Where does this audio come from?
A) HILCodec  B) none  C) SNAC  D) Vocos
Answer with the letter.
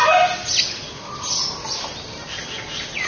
B